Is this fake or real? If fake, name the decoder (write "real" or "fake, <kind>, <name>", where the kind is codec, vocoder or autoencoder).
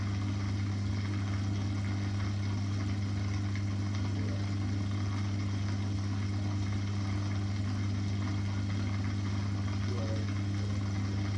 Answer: real